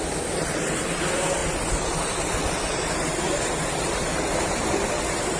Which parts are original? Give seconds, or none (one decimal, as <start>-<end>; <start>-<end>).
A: 0.0-5.4

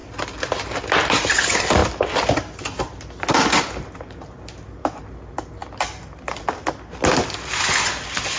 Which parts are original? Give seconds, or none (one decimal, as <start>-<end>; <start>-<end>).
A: 0.0-8.4

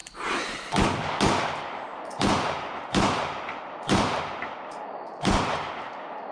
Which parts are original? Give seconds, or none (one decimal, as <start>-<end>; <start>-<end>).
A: 0.6-1.9; 5.7-6.3

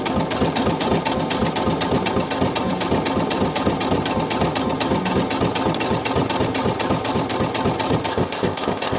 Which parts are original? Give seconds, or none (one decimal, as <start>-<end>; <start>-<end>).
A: 0.0-8.1

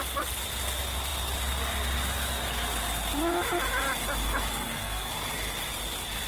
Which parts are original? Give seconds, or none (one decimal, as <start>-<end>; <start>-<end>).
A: 0.0-4.5; 5.1-6.3

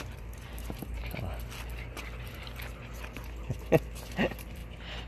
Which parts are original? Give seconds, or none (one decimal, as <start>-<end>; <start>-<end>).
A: 1.0-4.1; 4.6-5.1